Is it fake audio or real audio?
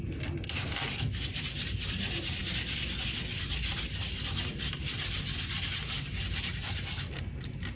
real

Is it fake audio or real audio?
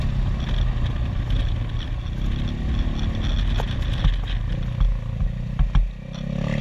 real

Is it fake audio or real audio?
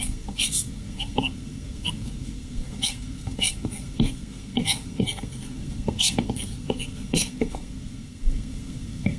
fake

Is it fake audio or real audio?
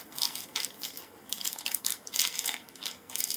fake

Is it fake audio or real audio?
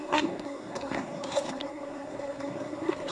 fake